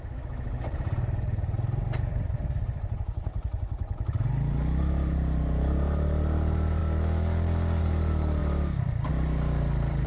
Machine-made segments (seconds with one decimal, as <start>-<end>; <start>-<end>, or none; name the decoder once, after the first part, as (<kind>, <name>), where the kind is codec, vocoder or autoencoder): 0.0-6.8 (vocoder, BigVGAN v2); 7.8-10.1